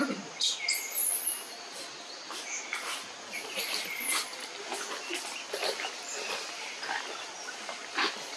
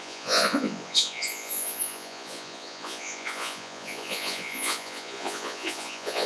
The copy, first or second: second